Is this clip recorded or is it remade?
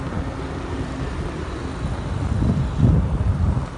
recorded